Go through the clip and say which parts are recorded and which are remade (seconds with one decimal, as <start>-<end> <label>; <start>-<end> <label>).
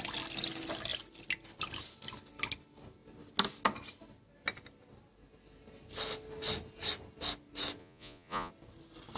0.0-7.8 recorded; 7.8-8.5 remade; 8.5-9.2 recorded